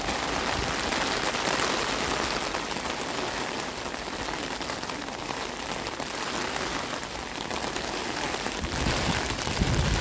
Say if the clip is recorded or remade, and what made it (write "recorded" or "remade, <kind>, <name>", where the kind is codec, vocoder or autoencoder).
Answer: recorded